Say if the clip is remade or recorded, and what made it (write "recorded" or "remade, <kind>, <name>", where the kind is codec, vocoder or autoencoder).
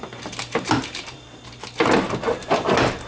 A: recorded